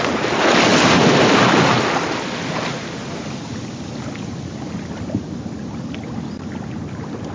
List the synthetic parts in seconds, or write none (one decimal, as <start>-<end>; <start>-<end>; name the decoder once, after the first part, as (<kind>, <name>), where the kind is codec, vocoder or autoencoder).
none